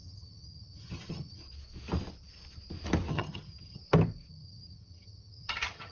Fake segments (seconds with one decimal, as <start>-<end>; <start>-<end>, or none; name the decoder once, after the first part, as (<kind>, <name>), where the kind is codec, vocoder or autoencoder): 0.0-1.4 (vocoder, HiFi-GAN); 3.1-3.8; 4.3-5.9